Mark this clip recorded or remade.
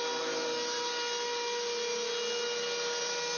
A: recorded